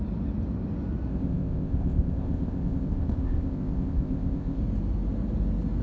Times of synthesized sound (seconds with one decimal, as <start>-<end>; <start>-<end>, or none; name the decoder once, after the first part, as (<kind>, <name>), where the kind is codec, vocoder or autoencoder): 1.1-4.6 (codec, ZipCodec)